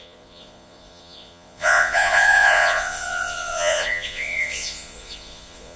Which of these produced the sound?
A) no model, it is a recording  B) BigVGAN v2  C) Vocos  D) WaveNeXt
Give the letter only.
C